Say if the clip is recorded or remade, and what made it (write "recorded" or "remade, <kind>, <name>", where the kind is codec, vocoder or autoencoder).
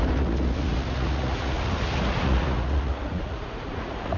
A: remade, vocoder, Vocos